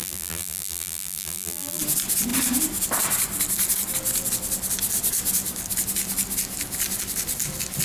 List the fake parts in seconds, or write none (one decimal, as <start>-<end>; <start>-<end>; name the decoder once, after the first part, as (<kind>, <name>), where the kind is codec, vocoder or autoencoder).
0.0-1.8 (vocoder, BigVGAN v2)